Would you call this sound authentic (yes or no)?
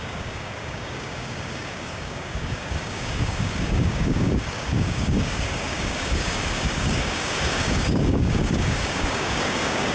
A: no